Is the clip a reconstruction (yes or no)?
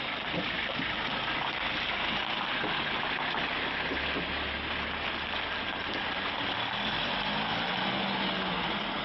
no